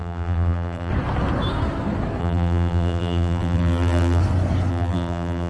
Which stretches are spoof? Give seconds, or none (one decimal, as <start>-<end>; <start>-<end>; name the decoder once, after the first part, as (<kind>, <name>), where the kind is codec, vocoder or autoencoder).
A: 0.0-0.9 (vocoder, BigVGAN v2); 2.2-4.2; 4.7-5.5